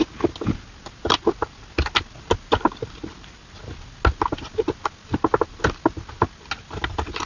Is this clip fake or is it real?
real